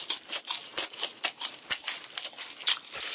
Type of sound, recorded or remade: recorded